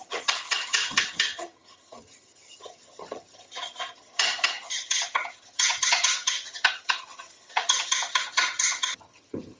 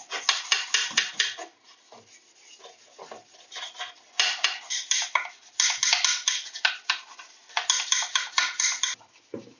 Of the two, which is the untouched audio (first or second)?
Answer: second